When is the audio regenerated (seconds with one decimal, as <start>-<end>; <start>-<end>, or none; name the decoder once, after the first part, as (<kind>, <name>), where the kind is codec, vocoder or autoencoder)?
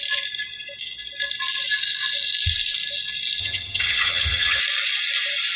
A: 3.4-4.6 (vocoder, HiFi-GAN)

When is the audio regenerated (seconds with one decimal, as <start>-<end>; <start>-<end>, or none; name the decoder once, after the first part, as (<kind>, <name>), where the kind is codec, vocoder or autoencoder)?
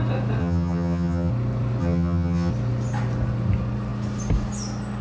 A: 0.4-1.3 (vocoder, HiFi-GAN); 1.8-2.5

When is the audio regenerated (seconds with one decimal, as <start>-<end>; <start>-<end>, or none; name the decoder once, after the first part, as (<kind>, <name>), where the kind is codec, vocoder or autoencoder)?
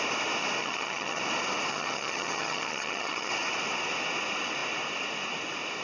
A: 0.6-1.2 (vocoder, HiFi-GAN); 1.7-3.3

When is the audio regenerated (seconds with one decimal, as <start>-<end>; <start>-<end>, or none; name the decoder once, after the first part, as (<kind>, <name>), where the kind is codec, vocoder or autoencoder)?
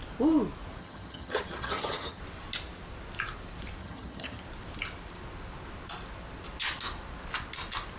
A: 0.8-2.2 (vocoder, HiFi-GAN); 3.8-4.4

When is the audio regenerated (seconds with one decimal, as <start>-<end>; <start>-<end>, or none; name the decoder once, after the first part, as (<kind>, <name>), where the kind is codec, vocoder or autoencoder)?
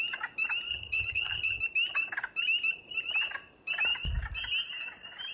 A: 0.7-1.6 (vocoder, HiFi-GAN)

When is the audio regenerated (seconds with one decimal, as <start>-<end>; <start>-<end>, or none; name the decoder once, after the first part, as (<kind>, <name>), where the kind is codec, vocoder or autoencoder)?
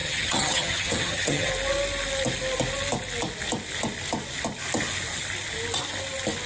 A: 0.0-1.5 (vocoder, HiFi-GAN)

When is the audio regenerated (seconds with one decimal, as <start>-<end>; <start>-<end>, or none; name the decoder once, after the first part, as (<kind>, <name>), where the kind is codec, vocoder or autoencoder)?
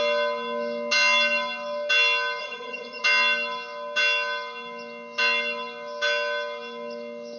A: 2.4-3.0 (vocoder, HiFi-GAN)